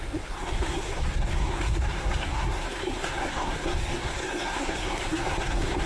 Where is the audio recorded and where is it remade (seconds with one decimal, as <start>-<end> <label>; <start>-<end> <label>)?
0.0-5.9 remade